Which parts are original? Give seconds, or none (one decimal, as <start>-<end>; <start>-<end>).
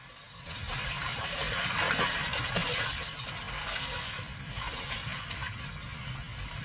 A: 0.0-3.6; 4.2-6.6